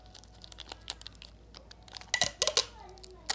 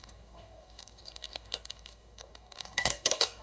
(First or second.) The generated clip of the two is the second